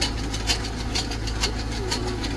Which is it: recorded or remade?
recorded